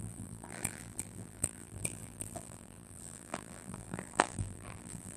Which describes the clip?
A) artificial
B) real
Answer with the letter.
A